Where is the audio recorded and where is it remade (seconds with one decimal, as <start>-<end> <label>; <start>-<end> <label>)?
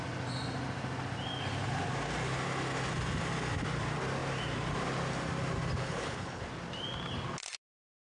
0.0-5.8 recorded; 5.8-6.4 remade; 6.4-8.1 recorded